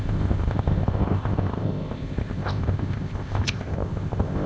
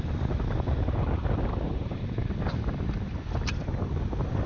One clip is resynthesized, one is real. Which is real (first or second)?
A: second